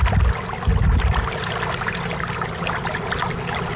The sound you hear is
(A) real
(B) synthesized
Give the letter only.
A